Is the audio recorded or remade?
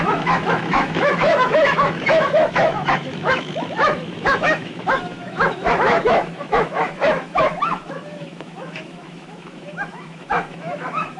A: remade